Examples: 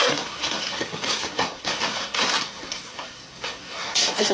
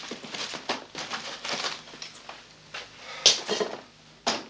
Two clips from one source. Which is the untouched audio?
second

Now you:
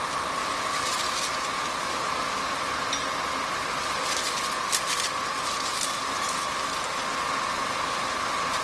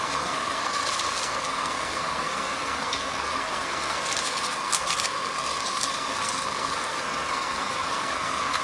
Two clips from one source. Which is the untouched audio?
first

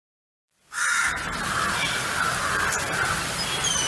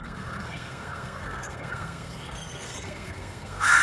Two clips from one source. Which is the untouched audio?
first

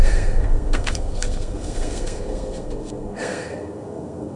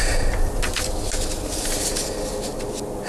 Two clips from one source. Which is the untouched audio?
second